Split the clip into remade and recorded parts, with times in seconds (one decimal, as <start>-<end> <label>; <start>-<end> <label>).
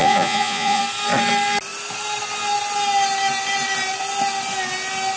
0.0-0.8 remade; 0.8-5.2 recorded